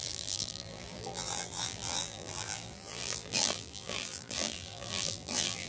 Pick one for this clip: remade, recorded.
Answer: remade